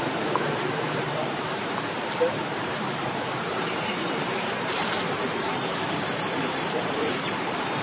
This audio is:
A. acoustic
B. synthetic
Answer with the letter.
B